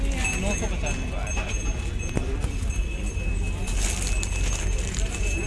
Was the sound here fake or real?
real